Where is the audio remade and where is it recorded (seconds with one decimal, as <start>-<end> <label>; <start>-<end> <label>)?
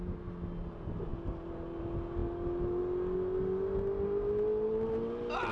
0.0-5.5 recorded